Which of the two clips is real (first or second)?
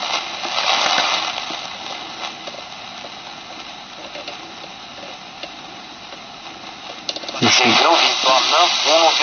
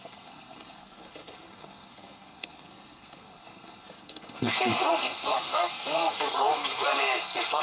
first